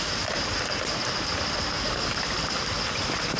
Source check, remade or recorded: recorded